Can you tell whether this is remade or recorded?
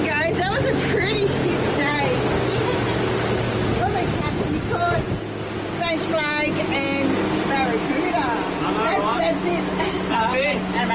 recorded